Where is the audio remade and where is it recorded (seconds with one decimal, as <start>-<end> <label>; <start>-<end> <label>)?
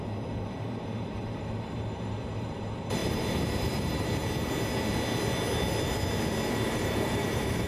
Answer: 0.0-4.2 remade; 4.2-6.5 recorded; 6.5-7.7 remade